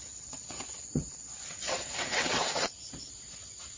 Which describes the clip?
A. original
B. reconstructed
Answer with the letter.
B